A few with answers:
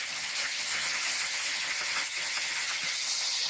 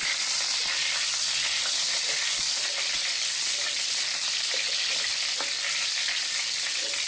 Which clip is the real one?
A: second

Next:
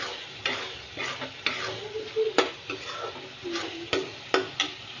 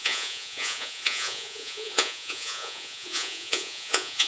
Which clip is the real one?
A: first